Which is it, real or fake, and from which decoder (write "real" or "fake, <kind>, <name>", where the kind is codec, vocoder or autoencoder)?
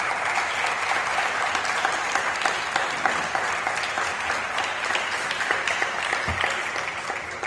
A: real